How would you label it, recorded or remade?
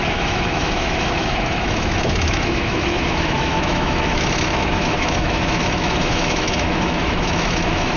remade